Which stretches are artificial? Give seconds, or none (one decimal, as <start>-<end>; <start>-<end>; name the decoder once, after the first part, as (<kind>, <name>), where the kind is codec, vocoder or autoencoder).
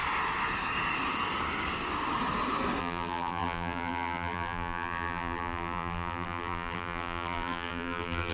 2.8-8.3 (vocoder, BigVGAN v2)